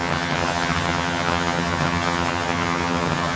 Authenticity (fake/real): fake